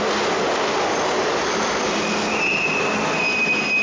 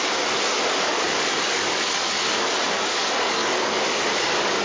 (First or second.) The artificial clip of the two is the second